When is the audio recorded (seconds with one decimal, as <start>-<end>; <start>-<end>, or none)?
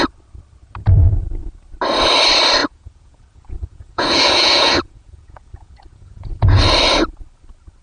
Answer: 0.0-2.6; 6.6-7.8